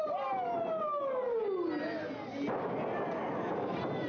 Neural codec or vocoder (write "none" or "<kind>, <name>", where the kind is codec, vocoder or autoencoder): none